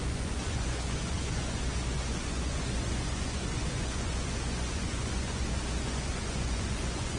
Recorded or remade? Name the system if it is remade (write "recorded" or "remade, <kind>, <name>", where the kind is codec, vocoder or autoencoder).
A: remade, vocoder, Vocos